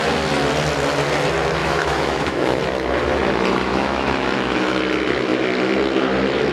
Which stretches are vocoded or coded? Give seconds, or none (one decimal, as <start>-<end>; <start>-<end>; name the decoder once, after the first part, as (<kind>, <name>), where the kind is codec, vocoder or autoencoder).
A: 1.6-2.6 (autoencoder, DAC-VAE); 3.7-4.8